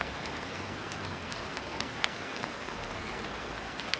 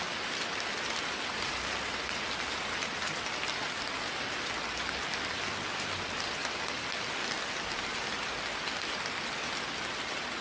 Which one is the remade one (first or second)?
first